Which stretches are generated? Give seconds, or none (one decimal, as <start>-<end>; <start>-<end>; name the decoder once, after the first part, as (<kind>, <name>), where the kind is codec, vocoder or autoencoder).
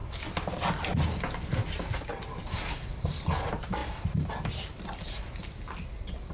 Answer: none